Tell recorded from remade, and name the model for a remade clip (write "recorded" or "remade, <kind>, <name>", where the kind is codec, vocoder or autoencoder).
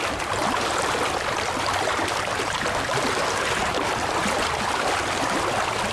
remade, vocoder, BigVGAN v2